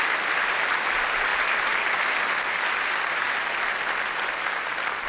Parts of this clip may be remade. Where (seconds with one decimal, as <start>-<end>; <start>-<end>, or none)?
none